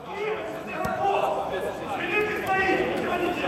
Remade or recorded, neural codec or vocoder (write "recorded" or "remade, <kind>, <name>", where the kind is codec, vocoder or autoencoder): remade, autoencoder, DAC-VAE